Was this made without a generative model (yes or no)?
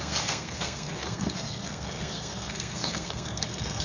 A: no